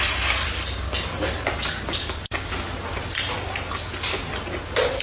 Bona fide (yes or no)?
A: yes